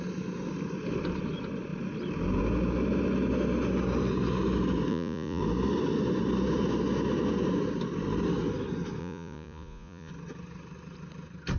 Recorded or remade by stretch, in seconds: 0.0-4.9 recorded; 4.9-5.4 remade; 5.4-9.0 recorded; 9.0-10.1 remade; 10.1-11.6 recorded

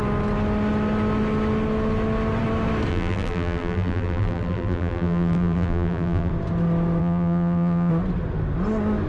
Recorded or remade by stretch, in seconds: 0.0-2.9 recorded; 2.9-6.3 remade; 6.3-7.0 recorded; 7.0-7.9 remade; 7.9-9.1 recorded

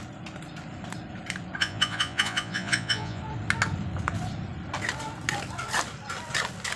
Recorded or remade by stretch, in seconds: 0.0-1.6 recorded; 1.6-3.2 remade; 3.2-6.8 recorded

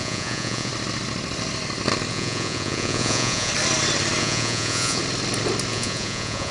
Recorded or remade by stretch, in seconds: 0.0-0.7 remade; 0.7-2.1 recorded; 2.1-3.5 remade; 3.5-4.2 recorded; 4.2-5.0 remade; 5.0-5.7 recorded; 5.7-6.5 remade